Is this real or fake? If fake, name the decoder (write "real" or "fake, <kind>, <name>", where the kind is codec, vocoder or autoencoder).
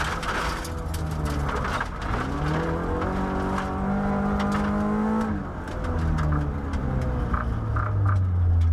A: real